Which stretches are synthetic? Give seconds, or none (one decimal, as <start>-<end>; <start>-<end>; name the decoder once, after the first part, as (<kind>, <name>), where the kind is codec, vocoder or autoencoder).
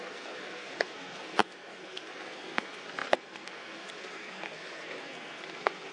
0.0-5.9 (codec, SNAC)